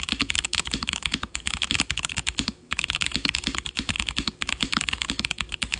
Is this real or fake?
fake